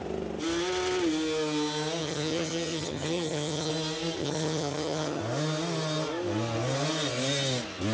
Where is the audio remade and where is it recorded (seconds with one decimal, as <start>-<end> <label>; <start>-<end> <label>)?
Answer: 0.0-2.0 recorded; 2.0-3.7 remade; 3.7-4.2 recorded; 4.2-5.2 remade; 5.2-7.9 recorded